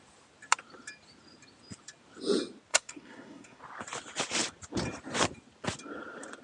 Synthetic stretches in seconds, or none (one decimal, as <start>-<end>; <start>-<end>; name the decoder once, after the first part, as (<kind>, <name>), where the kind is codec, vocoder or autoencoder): 2.7-3.6 (codec, SNAC)